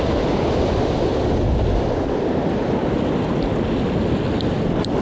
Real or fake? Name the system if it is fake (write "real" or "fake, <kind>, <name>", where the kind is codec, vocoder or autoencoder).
real